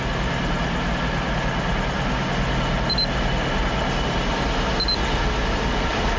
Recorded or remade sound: recorded